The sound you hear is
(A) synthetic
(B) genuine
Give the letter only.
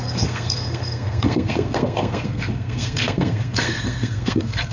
A